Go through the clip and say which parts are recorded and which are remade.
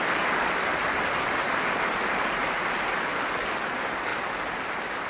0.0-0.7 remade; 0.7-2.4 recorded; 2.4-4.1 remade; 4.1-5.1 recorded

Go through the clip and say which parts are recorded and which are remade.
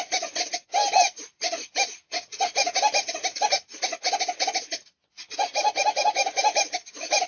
0.0-7.3 recorded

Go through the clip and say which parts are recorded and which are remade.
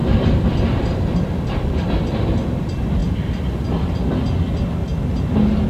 0.0-2.0 remade; 2.0-5.7 recorded